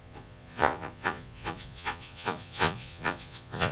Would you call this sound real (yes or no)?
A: no